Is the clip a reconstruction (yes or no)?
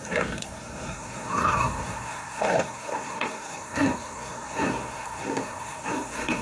yes